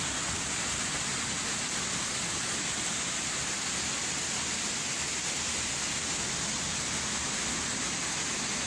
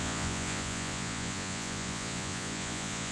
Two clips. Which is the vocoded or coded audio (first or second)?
second